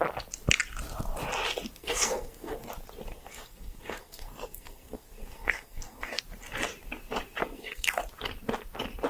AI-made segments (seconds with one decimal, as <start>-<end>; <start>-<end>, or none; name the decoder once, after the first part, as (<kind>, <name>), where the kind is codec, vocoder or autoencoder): 1.8-2.7 (codec, SNAC); 3.1-6.2; 7.4-7.9